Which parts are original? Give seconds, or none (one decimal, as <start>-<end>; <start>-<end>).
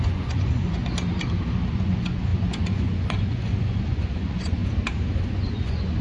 0.8-1.7; 4.6-5.2